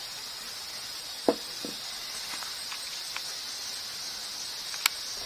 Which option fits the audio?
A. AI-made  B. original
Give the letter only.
B